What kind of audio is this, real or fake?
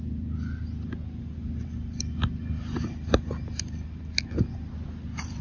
real